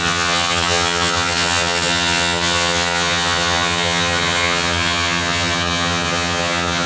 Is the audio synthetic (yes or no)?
yes